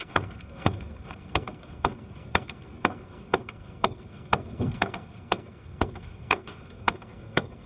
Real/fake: fake